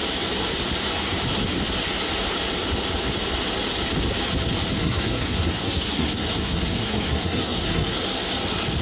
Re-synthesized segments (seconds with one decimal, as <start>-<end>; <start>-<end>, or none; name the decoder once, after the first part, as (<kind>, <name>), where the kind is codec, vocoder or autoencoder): 4.8-8.0 (codec, SNAC)